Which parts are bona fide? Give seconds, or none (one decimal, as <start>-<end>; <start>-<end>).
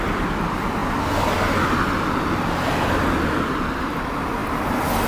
0.0-5.1